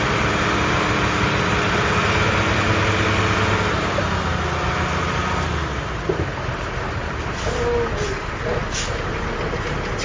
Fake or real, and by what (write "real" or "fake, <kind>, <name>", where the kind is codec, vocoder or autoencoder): real